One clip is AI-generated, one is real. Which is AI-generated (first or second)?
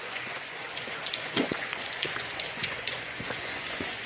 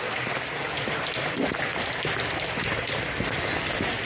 first